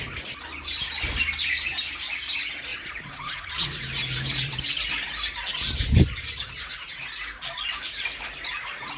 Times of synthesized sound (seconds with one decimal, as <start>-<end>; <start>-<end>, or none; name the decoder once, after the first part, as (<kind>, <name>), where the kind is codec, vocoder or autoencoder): 2.7-3.8 (vocoder, Vocos)